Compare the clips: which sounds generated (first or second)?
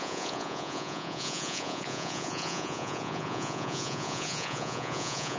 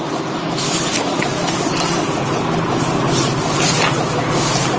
first